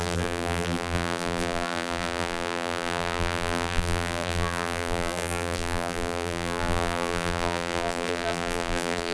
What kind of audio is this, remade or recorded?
remade